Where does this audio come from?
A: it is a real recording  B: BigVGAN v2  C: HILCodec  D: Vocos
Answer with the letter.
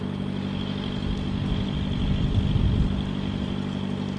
A